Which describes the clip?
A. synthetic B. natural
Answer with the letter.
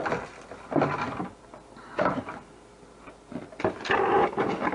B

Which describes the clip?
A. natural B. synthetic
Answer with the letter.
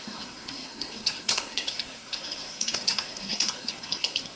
B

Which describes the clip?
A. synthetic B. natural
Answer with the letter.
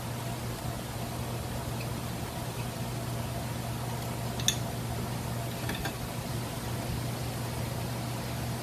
B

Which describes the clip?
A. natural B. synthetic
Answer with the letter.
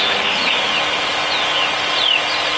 A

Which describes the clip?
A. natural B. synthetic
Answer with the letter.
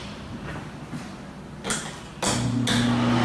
A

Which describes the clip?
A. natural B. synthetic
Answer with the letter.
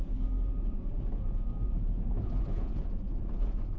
B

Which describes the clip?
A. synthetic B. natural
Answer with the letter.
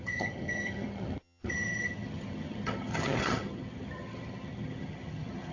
A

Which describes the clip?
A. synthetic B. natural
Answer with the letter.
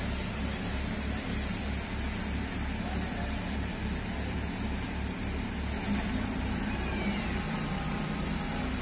B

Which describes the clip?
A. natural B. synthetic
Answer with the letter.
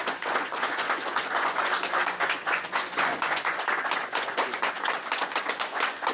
B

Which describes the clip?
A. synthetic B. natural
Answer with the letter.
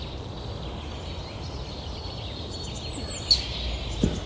B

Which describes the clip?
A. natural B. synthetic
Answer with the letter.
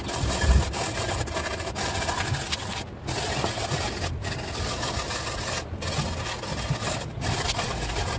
A